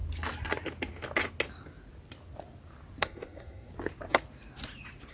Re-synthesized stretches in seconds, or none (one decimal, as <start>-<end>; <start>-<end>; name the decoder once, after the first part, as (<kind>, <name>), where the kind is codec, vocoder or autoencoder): 3.0-3.7 (codec, SNAC)